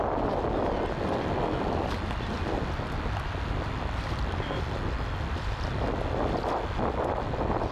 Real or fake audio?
real